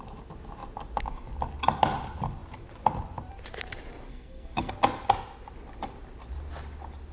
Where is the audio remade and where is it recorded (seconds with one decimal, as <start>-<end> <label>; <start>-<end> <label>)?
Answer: 0.0-4.1 recorded; 4.1-4.7 remade; 4.7-7.1 recorded